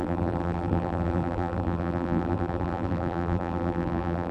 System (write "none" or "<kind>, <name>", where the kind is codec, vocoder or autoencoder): vocoder, BigVGAN v2